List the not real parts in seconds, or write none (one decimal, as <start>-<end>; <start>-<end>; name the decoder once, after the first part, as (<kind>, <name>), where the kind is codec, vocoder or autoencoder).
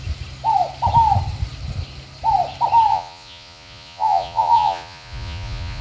2.9-5.8 (vocoder, Vocos)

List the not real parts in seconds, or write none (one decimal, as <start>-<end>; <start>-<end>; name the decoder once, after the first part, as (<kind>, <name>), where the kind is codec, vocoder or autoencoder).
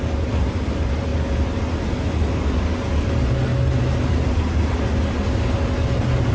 none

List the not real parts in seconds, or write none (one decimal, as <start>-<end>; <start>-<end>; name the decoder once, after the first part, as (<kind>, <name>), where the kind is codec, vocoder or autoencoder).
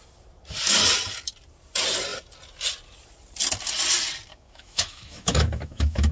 4.3-6.1 (autoencoder, DAC-VAE)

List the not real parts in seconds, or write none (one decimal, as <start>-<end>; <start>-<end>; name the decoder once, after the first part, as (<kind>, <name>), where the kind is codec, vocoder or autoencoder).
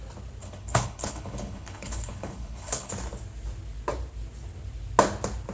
0.4-2.9 (codec, HILCodec)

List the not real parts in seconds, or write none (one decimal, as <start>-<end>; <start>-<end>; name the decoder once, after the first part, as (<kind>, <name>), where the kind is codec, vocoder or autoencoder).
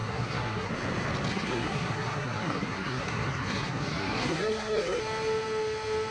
0.0-0.7 (codec, SNAC); 1.3-5.0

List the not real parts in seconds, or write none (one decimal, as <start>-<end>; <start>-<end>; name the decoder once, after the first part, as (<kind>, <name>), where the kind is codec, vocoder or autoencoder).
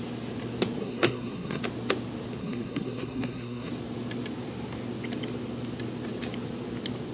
0.8-1.6 (codec, SNAC); 2.4-3.7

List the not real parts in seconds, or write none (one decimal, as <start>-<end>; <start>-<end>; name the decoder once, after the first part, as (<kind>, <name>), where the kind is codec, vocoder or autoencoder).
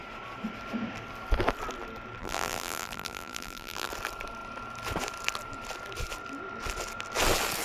2.2-3.9 (vocoder, BigVGAN v2)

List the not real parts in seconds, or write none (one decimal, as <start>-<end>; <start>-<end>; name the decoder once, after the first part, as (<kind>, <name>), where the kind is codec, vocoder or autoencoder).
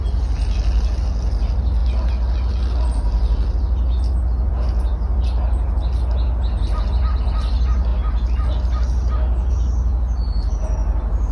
none